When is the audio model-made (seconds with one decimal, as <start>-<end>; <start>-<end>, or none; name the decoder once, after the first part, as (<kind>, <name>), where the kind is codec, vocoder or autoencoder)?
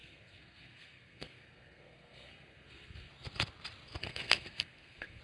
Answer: 0.0-3.1 (codec, SNAC); 4.0-5.2